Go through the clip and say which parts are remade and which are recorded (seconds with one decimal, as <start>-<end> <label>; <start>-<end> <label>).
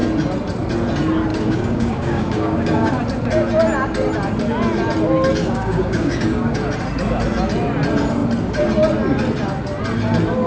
0.0-1.3 recorded; 1.3-2.9 remade; 2.9-5.4 recorded; 5.4-6.6 remade; 6.6-10.5 recorded